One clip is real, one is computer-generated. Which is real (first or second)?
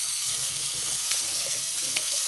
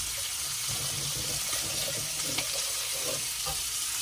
second